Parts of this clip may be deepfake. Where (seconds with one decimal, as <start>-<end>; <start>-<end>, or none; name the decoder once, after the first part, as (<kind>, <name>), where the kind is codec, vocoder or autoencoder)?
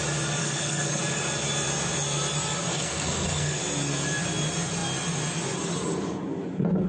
0.4-1.0 (codec, SNAC); 2.7-3.6